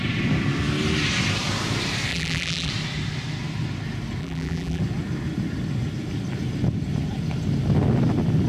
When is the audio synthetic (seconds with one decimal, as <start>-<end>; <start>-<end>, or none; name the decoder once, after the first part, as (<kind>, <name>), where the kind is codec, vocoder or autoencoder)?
2.1-2.7 (vocoder, BigVGAN v2); 4.2-4.8